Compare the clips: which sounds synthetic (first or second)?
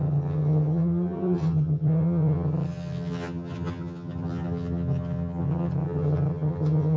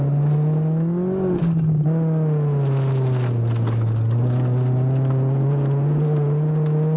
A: first